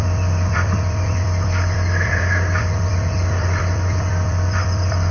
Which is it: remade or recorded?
remade